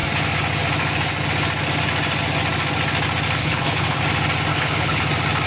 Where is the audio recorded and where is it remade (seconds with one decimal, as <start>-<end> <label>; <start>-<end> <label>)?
0.0-3.4 recorded; 3.4-4.0 remade; 4.0-4.5 recorded; 4.5-5.0 remade; 5.0-5.5 recorded